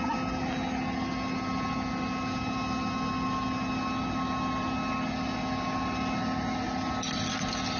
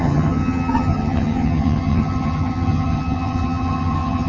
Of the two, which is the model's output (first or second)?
second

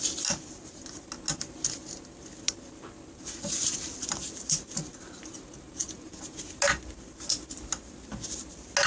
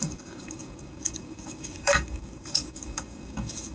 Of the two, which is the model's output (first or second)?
second